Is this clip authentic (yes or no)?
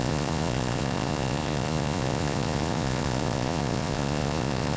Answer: no